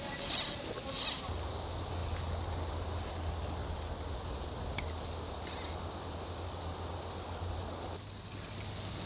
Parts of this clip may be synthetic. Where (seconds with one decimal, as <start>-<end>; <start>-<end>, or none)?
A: none